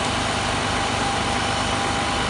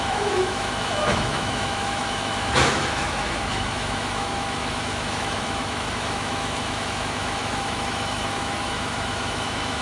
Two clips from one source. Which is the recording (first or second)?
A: first